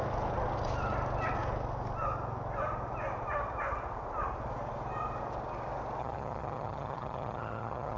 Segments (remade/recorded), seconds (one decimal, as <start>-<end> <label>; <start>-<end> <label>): 0.0-6.0 recorded; 6.0-8.0 remade